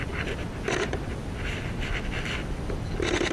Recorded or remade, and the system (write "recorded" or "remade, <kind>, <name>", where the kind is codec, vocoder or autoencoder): recorded